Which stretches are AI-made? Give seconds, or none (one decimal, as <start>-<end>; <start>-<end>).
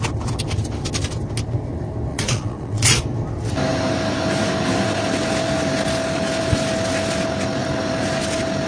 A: 2.1-3.0